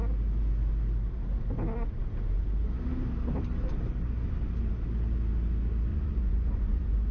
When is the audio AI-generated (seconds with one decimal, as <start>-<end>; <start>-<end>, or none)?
5.9-7.1